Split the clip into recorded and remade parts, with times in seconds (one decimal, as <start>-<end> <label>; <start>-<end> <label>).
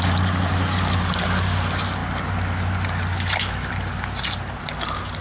0.0-5.2 recorded